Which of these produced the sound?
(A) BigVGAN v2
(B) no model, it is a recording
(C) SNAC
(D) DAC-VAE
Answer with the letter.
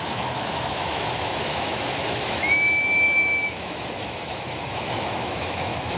D